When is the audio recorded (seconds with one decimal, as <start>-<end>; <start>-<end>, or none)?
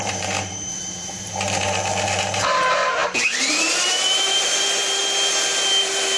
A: 5.0-5.8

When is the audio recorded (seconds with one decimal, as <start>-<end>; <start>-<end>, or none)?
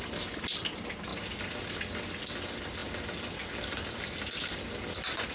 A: 0.0-5.3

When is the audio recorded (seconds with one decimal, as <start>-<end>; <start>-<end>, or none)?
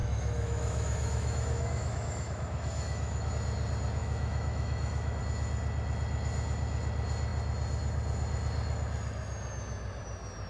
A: 3.3-4.0; 5.2-10.5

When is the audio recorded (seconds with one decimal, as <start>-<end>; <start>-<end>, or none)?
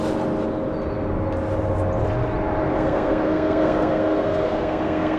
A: 0.0-2.7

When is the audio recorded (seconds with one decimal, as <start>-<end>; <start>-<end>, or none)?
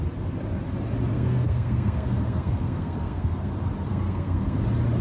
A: 0.0-1.1; 3.5-3.9; 4.6-5.0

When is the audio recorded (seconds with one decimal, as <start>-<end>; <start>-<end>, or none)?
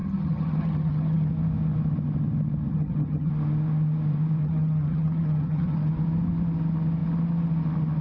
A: 1.3-2.7; 3.3-4.4; 5.9-8.0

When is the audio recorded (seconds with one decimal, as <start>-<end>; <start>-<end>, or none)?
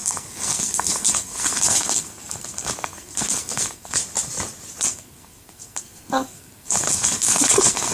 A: 4.0-4.8